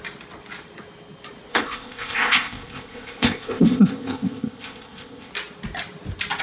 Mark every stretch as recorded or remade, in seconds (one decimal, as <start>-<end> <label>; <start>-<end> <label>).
0.0-1.5 recorded; 1.5-5.3 remade; 5.3-6.4 recorded